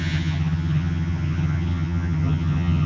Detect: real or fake fake